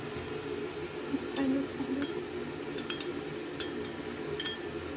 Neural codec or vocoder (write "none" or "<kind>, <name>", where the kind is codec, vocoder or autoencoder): none